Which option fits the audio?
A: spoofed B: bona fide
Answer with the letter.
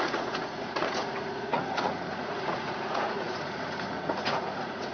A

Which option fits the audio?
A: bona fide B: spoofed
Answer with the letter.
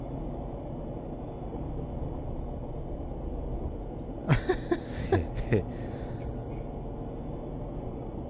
A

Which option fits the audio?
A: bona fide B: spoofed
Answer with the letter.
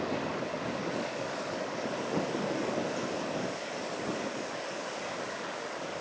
B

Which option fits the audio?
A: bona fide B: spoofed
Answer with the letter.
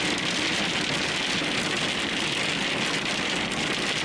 A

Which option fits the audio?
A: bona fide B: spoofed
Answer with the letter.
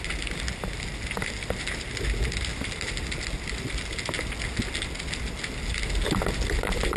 A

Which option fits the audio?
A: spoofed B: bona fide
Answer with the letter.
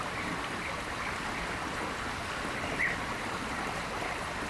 B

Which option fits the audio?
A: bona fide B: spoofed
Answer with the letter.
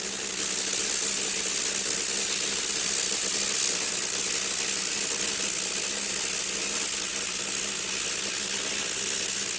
A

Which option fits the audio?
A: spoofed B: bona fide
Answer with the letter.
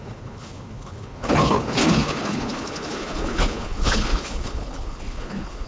A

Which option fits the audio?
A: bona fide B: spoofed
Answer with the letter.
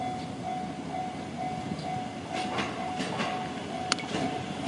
A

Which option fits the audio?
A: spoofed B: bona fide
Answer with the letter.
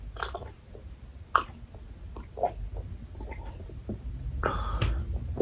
B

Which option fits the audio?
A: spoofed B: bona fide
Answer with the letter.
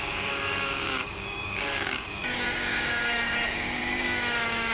A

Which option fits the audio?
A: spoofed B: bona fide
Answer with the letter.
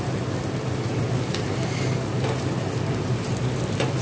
B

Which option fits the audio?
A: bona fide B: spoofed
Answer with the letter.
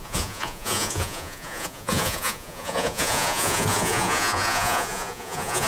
B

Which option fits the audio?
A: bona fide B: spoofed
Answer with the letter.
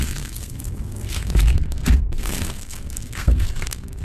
B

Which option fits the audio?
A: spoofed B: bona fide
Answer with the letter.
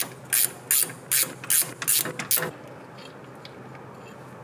B